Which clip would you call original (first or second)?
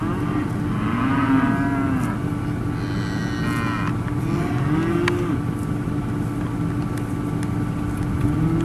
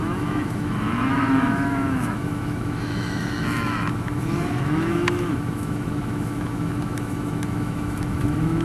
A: first